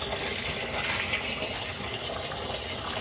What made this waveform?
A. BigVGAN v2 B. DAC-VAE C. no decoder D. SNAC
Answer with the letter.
C